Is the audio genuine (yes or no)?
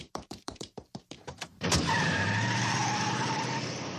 no